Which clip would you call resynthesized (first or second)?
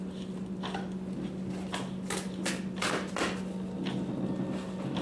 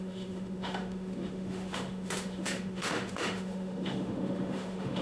second